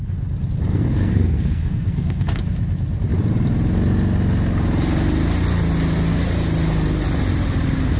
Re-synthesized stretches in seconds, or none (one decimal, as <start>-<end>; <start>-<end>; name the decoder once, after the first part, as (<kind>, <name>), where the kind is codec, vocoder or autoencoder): 0.7-2.4 (codec, SNAC)